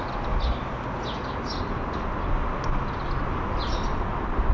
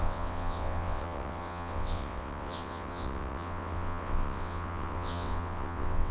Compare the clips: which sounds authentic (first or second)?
first